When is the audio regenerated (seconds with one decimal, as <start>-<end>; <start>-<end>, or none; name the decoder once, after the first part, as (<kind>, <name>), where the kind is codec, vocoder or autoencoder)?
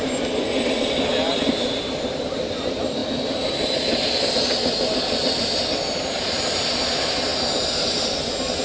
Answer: none